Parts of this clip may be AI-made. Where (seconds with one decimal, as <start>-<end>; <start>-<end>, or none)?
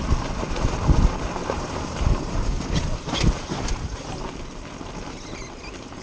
1.4-4.2